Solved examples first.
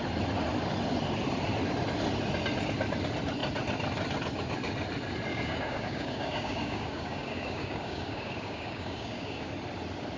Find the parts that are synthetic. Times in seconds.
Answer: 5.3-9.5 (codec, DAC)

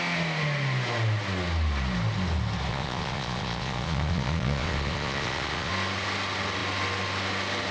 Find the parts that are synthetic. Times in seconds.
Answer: 2.7-5.7 (vocoder, Vocos)

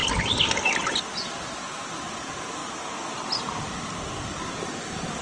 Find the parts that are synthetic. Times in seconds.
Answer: none

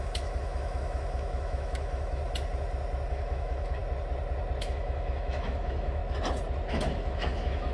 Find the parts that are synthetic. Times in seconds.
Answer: 0.0-2.2 (autoencoder, DAC-VAE); 3.1-3.8; 4.6-6.0; 6.7-7.7

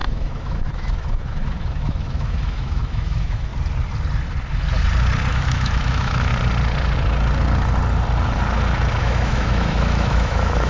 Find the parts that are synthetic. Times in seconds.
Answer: 0.0-3.5 (autoencoder, DAC-VAE); 5.3-6.3; 9.0-10.7